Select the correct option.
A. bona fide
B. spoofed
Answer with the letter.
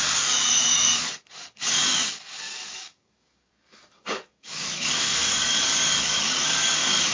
B